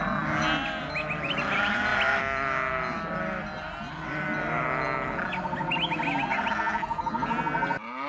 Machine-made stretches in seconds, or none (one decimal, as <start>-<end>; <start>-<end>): none